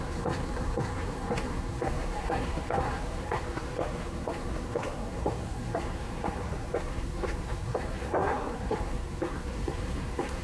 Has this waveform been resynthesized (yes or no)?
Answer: yes